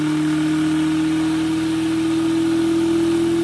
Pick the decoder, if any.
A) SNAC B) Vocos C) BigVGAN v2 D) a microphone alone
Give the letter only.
D